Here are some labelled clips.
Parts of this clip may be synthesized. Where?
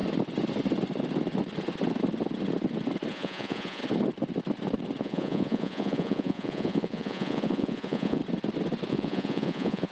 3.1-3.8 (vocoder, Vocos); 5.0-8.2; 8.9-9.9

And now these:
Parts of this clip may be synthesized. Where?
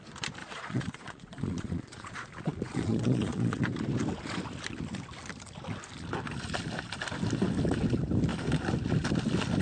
0.4-3.6 (vocoder, Vocos)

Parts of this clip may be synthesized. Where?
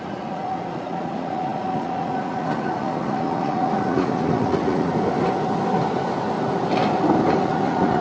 0.0-4.9 (vocoder, Vocos); 7.4-8.0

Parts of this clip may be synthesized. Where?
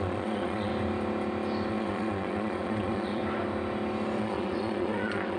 0.0-0.7 (vocoder, Vocos); 1.7-3.2; 4.2-5.4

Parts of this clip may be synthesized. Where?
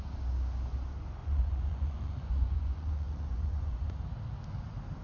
1.2-3.9 (vocoder, Vocos)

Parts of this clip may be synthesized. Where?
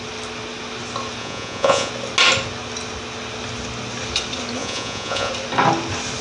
1.2-1.9 (vocoder, Vocos); 4.6-5.3